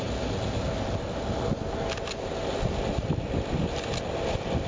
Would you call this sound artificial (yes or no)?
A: no